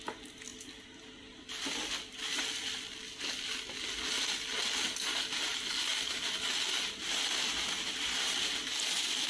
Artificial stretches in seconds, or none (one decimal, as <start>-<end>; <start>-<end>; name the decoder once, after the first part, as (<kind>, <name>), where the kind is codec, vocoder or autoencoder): none